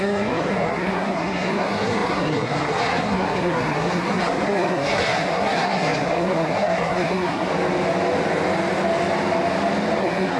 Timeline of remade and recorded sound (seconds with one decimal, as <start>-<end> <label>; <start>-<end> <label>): 0.0-7.5 remade; 7.5-10.0 recorded; 10.0-10.4 remade